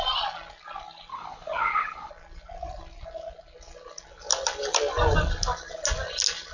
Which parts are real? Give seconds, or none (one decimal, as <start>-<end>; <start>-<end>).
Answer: 0.0-1.1; 2.1-6.5